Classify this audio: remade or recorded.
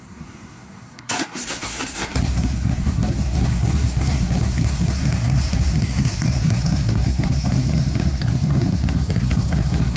remade